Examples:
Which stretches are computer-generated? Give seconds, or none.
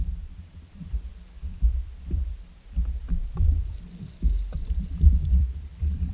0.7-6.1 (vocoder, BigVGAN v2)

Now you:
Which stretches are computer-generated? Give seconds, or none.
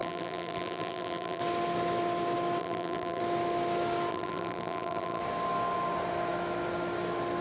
0.0-1.4 (vocoder, BigVGAN v2); 2.6-3.2; 4.1-5.2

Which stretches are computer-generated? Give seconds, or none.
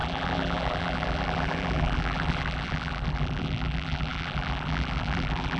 0.0-5.6 (vocoder, BigVGAN v2)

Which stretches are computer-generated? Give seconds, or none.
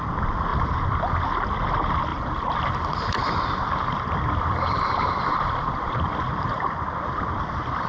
0.5-1.1 (vocoder, BigVGAN v2); 2.1-6.8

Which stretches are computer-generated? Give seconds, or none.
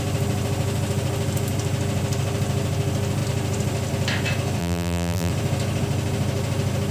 4.6-5.3 (vocoder, BigVGAN v2)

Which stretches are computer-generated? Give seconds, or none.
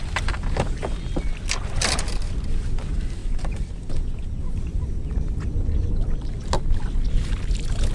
3.2-3.7 (vocoder, BigVGAN v2)